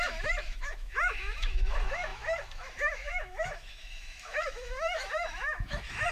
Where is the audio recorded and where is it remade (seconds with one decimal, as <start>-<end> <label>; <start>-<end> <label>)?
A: 0.0-6.1 remade